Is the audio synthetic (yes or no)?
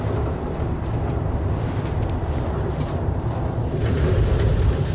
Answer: no